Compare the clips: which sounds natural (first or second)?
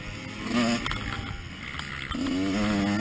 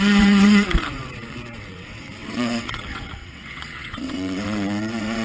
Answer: first